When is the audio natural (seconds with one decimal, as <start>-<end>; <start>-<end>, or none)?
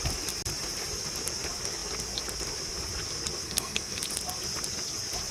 0.0-3.4; 4.0-5.3